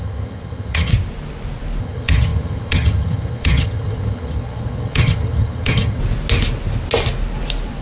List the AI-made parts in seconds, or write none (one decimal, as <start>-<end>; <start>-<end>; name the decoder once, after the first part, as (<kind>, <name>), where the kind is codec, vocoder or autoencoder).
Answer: 0.0-0.9 (vocoder, HiFi-GAN); 1.8-6.0